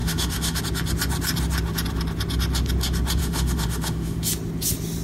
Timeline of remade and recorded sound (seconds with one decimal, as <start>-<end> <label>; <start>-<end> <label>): 0.0-0.6 remade; 0.6-3.2 recorded; 3.2-4.3 remade; 4.3-5.0 recorded